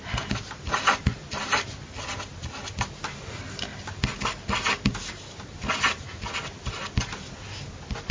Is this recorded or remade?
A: recorded